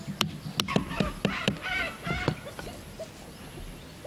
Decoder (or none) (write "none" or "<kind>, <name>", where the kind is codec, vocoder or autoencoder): none